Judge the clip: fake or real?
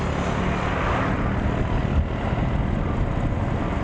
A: real